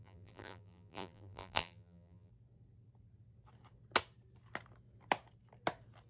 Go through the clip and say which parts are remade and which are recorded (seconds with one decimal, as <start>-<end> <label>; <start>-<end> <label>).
0.0-2.3 remade; 2.3-6.1 recorded